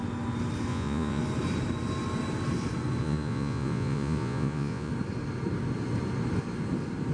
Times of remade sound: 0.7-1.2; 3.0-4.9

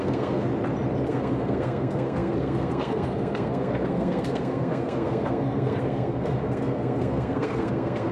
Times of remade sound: 0.0-0.5; 1.1-8.1

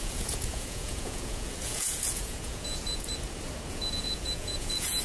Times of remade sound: 0.0-3.1; 3.7-5.0

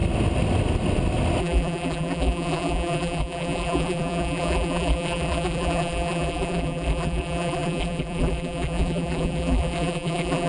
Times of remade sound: 1.4-10.5

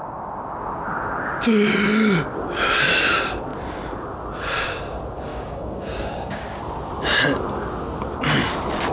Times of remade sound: 5.3-6.6